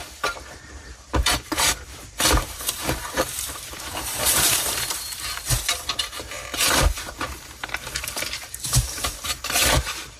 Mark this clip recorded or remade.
remade